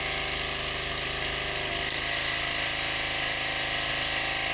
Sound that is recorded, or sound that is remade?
recorded